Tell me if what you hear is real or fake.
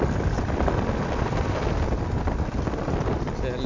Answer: real